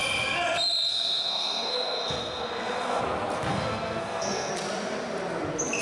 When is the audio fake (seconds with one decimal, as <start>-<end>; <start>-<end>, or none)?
0.9-3.0; 3.5-4.5